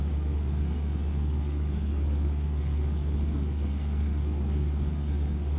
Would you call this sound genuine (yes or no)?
no